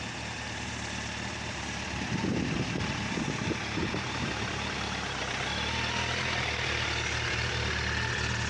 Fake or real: real